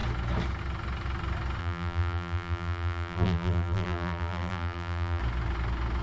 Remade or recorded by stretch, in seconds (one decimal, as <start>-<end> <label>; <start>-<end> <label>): 0.0-1.6 recorded; 1.6-5.2 remade; 5.2-6.0 recorded